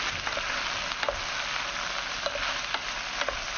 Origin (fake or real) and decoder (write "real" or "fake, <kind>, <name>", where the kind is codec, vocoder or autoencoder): real